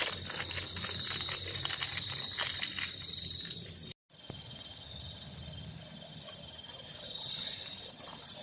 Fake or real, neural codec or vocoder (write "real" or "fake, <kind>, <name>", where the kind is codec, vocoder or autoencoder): real